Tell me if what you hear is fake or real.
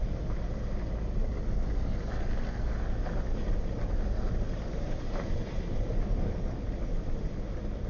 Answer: real